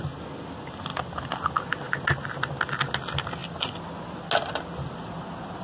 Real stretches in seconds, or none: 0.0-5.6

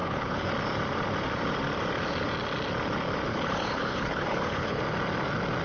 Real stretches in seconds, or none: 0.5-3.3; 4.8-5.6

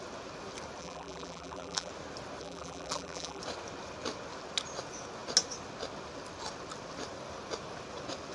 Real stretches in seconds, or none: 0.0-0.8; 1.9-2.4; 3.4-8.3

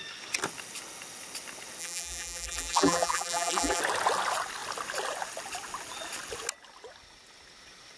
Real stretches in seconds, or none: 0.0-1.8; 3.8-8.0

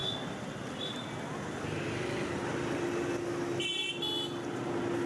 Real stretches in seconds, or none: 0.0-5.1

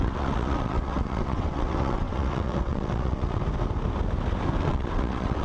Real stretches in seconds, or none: 3.4-4.6